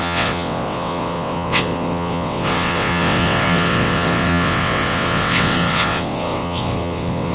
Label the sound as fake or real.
fake